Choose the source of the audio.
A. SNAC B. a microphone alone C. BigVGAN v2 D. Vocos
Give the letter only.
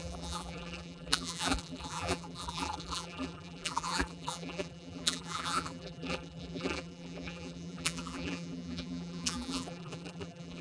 C